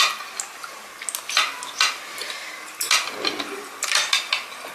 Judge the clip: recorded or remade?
recorded